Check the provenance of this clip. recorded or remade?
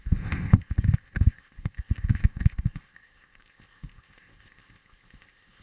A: remade